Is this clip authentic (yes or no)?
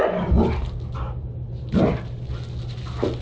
yes